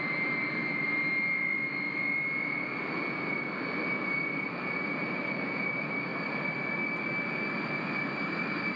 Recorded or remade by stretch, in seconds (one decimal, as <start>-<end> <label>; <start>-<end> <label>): 0.0-0.6 remade; 0.6-4.9 recorded; 4.9-6.1 remade; 6.1-8.0 recorded; 8.0-8.8 remade